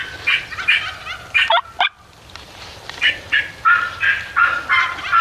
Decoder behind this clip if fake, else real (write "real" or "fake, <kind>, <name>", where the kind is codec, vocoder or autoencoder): real